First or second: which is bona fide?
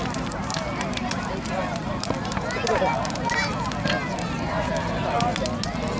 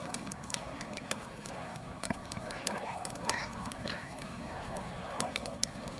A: first